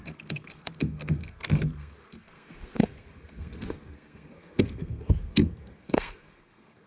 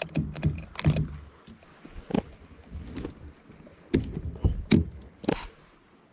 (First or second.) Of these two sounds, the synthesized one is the first